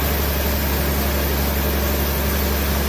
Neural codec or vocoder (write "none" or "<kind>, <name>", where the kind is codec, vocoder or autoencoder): none